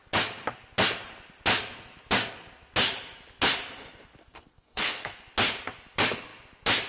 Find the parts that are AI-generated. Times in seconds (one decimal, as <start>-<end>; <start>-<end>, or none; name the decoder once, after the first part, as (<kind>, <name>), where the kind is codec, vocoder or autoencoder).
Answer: 4.2-5.2 (codec, SNAC)